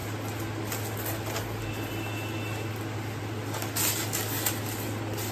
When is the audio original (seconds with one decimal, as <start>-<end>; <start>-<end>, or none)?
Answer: 0.0-5.3